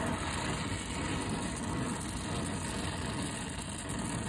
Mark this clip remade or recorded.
recorded